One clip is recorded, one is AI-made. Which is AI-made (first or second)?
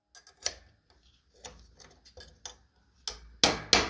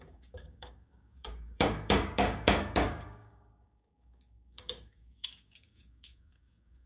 second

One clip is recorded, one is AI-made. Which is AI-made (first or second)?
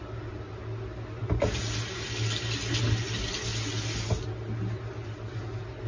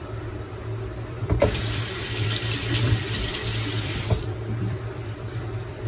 second